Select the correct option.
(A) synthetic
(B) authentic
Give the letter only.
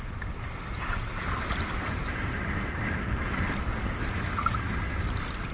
B